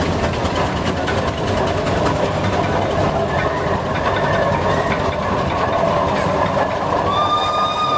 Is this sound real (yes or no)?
yes